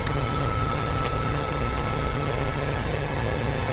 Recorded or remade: remade